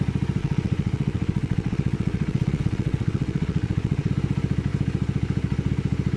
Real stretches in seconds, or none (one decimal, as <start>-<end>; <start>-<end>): 0.0-0.4; 4.1-6.2